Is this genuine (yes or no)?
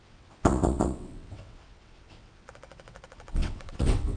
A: no